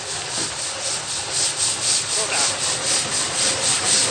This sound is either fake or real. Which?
real